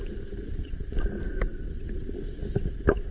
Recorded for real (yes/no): yes